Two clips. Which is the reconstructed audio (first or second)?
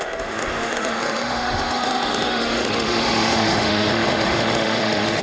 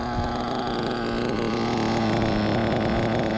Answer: first